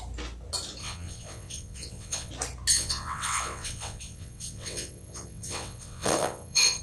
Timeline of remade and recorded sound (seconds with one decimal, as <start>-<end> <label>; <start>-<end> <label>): 0.0-0.8 recorded; 0.8-2.3 remade; 2.3-2.7 recorded; 2.7-6.8 remade